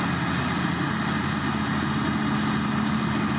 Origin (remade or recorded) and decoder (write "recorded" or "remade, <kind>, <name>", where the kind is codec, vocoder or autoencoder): recorded